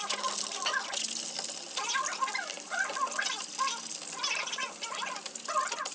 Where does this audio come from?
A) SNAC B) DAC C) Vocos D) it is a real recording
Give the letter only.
D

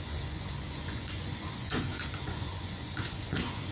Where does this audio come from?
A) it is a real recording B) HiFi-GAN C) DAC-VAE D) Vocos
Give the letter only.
D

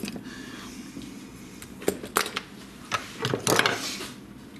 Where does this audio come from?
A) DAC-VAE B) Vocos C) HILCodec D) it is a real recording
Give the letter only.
D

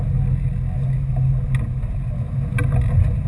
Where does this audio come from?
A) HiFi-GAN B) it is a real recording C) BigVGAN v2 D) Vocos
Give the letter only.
B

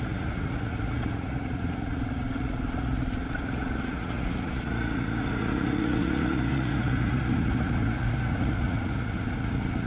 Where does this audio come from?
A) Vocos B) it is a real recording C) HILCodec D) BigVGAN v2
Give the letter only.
A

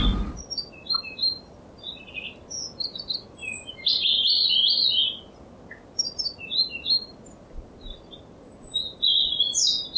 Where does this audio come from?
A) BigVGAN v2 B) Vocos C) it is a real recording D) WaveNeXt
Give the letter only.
C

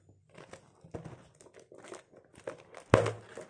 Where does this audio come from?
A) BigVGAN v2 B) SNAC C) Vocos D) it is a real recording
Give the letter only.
D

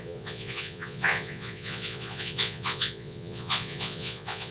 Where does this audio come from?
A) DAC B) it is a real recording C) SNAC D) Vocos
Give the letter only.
D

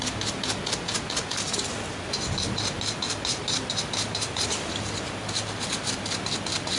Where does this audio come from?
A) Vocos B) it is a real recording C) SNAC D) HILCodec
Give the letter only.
B